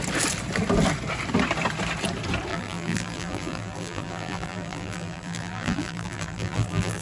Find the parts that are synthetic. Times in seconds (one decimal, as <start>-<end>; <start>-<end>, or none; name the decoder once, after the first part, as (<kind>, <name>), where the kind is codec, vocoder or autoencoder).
2.5-7.0 (vocoder, BigVGAN v2)